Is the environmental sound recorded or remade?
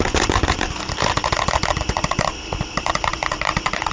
recorded